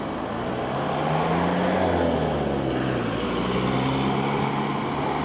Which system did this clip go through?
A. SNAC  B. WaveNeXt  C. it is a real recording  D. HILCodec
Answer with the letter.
C